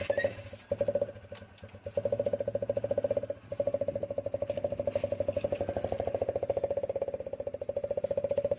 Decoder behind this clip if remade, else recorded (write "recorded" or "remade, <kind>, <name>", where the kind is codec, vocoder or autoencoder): recorded